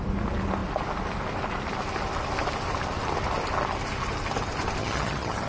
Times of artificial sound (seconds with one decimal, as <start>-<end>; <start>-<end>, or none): 4.8-5.5

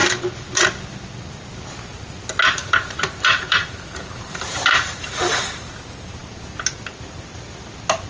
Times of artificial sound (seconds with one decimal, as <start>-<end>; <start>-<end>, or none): 2.6-5.7

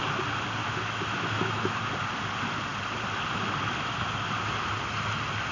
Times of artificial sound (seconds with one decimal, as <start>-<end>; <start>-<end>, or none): 0.6-1.8

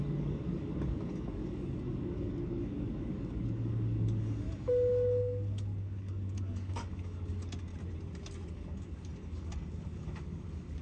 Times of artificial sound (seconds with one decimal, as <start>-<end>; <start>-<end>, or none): 0.0-7.7; 8.5-10.8

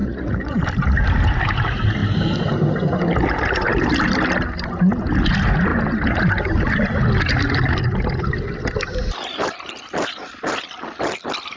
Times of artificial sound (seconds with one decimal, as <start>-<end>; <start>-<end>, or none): 0.0-0.6

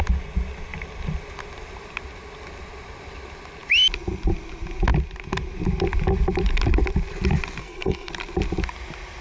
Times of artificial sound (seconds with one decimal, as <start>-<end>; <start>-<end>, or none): 7.6-8.1

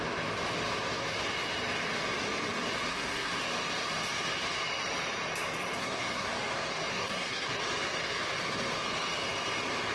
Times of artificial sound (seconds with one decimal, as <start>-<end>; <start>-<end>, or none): 2.9-3.4; 5.8-6.3; 6.9-7.6

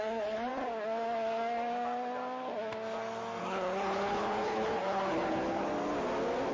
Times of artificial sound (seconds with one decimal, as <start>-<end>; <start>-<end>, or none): 0.0-0.5; 3.4-5.7